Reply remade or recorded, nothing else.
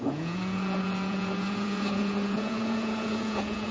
remade